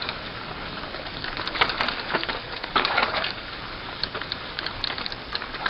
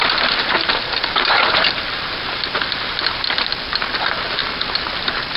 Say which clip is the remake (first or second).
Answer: first